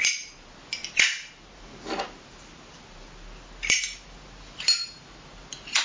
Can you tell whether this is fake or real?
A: real